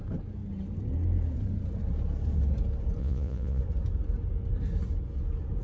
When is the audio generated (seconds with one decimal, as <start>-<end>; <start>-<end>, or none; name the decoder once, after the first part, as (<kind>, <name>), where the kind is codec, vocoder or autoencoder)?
3.0-3.6 (vocoder, Vocos)